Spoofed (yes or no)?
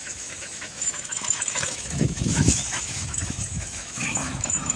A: yes